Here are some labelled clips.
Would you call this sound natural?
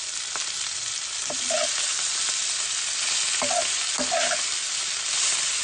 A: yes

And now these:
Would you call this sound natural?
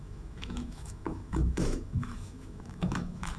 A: no